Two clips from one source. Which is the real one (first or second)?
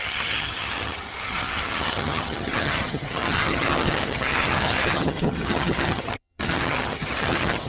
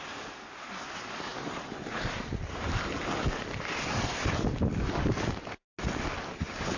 second